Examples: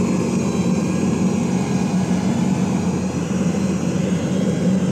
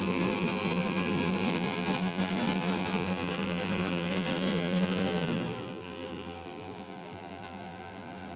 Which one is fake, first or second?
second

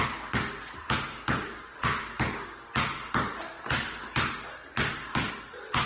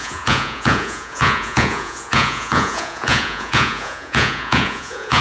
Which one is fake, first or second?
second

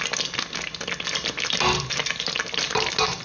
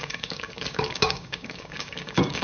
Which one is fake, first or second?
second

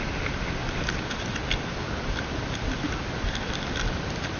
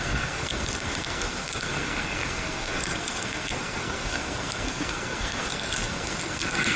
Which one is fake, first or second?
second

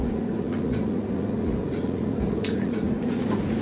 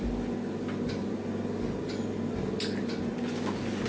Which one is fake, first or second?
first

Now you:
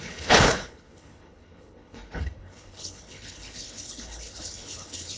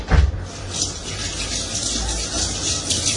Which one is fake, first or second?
first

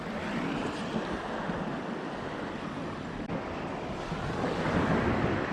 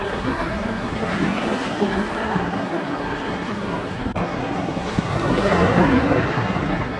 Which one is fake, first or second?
second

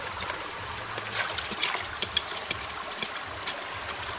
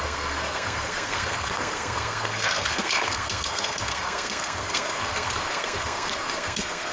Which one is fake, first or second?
second